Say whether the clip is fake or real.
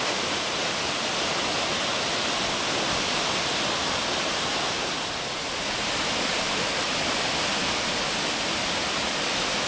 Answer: real